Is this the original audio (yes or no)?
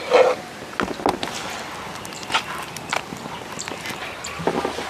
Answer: yes